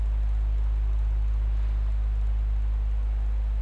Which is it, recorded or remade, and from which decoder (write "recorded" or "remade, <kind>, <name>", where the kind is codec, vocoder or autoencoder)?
recorded